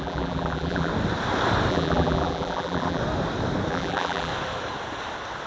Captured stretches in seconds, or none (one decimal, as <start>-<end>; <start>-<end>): 0.9-1.7; 3.0-3.7; 4.3-5.5